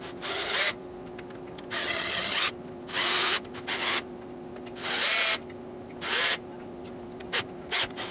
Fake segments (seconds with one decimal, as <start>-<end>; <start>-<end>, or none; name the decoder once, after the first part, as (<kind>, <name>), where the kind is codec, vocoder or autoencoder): 1.8-2.5 (vocoder, HiFi-GAN)